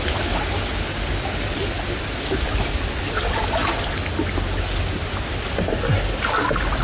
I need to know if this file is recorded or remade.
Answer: recorded